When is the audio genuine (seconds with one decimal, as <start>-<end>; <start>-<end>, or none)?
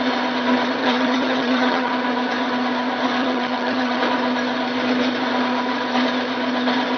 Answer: 0.0-0.8; 1.9-3.2; 4.0-7.0